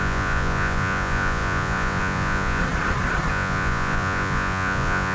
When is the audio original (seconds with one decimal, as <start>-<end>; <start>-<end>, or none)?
2.6-3.3